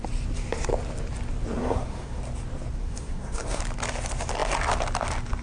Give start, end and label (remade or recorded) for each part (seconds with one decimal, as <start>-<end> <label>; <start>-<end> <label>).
0.0-1.6 recorded; 1.6-2.2 remade; 2.2-2.8 recorded; 2.8-3.6 remade; 3.6-5.4 recorded